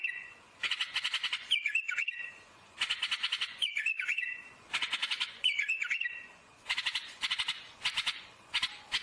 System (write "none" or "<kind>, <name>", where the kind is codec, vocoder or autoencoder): vocoder, Vocos